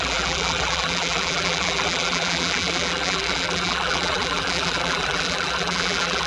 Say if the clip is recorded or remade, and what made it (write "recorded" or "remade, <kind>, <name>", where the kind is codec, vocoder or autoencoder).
remade, vocoder, BigVGAN v2